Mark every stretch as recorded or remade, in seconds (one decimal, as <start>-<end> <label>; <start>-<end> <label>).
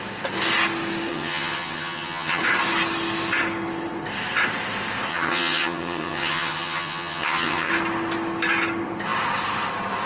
0.0-1.1 recorded; 1.1-2.4 remade; 2.4-5.1 recorded; 5.1-7.7 remade; 7.7-10.1 recorded